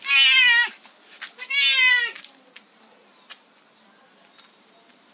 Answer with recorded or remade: recorded